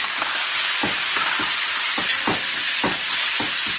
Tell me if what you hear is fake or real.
real